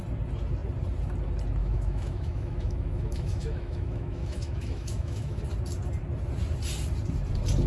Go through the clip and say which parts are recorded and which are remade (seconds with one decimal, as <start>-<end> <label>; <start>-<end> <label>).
0.0-1.6 recorded; 1.6-5.4 remade; 5.4-7.7 recorded